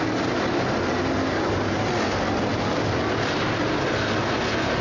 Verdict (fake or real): real